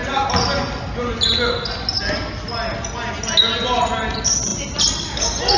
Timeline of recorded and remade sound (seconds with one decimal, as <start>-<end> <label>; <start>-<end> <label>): 0.0-5.6 recorded